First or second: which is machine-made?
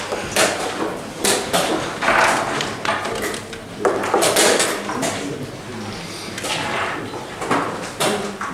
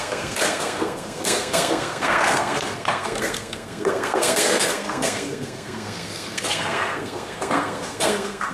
second